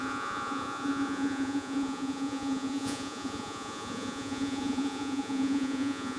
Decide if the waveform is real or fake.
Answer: fake